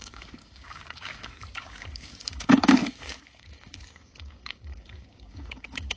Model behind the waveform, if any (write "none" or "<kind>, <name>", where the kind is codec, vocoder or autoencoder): codec, DAC